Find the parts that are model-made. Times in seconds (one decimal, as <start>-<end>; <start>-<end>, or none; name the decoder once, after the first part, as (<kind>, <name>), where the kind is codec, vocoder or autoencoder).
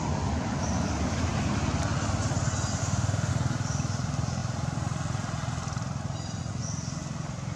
2.8-3.3 (autoencoder, DAC-VAE)